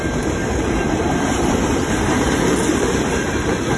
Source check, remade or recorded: remade